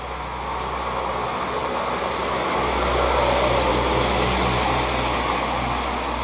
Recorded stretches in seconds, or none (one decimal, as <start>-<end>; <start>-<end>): 0.0-6.2